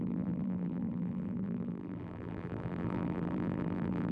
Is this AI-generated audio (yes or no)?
yes